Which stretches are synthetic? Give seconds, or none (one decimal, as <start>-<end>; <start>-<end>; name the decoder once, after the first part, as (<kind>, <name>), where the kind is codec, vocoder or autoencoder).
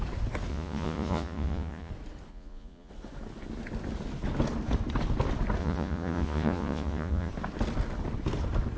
0.5-1.9 (vocoder, Vocos); 2.3-2.9; 5.6-7.3